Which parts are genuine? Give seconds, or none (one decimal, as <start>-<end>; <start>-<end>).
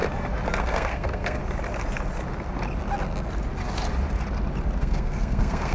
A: 0.0-0.6; 1.4-4.8